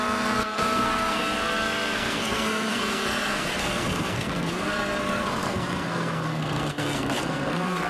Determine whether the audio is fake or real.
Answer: fake